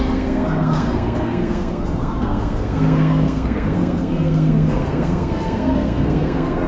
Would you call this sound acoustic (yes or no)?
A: no